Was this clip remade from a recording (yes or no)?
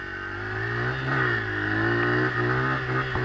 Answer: no